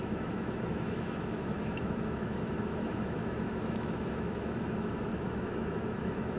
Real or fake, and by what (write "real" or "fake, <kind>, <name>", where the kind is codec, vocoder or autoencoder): fake, autoencoder, DAC-VAE